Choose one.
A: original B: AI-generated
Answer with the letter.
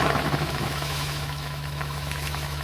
B